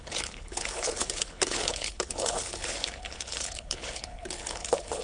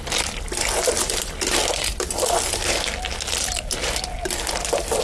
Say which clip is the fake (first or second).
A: first